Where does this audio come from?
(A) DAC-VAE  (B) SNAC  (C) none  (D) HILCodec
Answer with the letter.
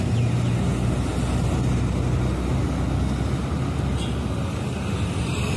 C